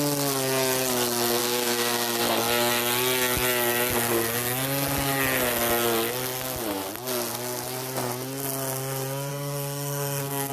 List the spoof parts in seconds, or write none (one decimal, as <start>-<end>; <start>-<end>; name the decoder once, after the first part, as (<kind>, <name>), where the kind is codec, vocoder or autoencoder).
1.4-2.2 (codec, SNAC); 9.3-10.5